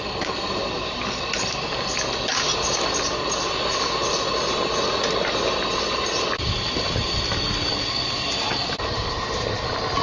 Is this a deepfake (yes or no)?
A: no